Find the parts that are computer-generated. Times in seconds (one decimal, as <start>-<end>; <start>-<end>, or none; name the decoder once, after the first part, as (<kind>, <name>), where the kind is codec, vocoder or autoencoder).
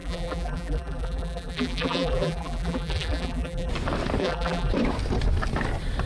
0.0-3.7 (vocoder, BigVGAN v2); 4.2-4.7